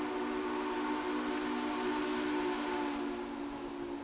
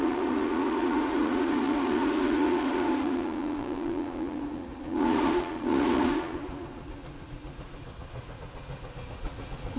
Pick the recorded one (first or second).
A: first